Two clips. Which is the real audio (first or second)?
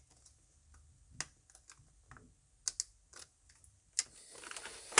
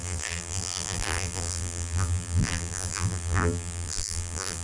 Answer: first